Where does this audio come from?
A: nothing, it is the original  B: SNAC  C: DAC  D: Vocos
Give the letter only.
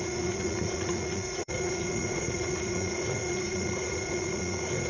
D